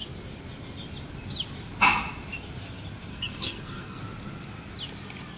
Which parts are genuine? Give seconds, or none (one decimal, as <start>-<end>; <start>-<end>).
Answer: 0.0-3.1; 4.0-5.4